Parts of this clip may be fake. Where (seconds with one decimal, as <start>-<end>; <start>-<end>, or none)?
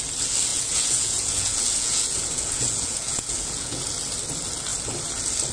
0.5-3.8